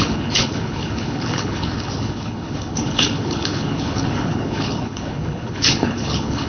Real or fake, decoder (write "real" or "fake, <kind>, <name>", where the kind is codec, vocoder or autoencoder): fake, codec, HILCodec